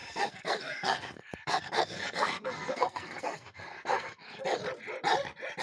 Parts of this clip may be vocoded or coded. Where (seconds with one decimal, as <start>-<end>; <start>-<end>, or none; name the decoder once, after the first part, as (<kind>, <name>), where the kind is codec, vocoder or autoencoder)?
0.0-4.6 (codec, SNAC)